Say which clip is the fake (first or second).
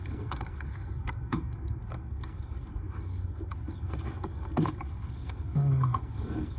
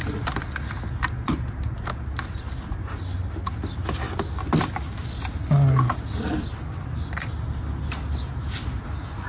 first